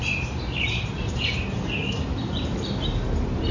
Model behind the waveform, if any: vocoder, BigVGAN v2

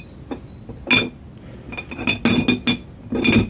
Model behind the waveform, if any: none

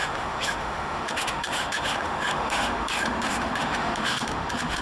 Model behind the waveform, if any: autoencoder, DAC-VAE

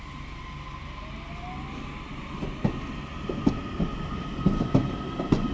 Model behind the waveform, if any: none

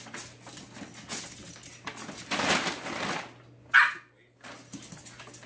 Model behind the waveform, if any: none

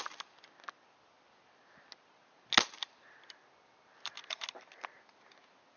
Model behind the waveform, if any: none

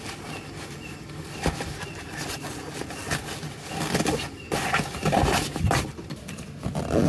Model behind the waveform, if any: none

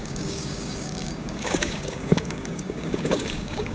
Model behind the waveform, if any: codec, DAC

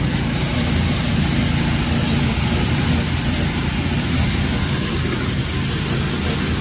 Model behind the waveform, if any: none